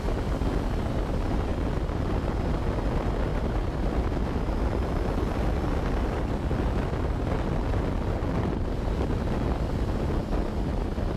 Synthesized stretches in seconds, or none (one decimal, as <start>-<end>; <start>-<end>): 3.3-5.7